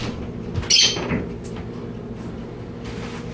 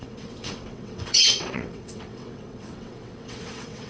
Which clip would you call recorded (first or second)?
first